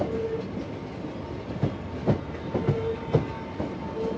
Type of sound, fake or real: real